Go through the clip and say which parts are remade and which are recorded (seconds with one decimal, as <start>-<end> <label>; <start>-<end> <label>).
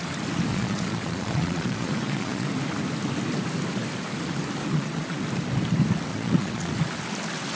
0.0-0.5 recorded; 0.5-2.5 remade; 2.5-4.6 recorded; 4.6-5.2 remade; 5.2-6.1 recorded; 6.1-6.7 remade; 6.7-7.6 recorded